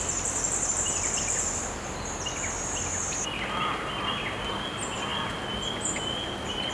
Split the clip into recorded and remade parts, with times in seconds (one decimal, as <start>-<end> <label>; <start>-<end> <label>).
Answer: 0.0-6.7 recorded